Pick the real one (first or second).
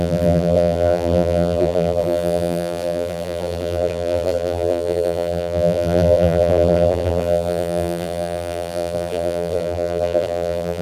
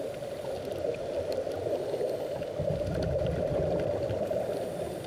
second